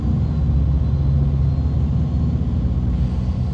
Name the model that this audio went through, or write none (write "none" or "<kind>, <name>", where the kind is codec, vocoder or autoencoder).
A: none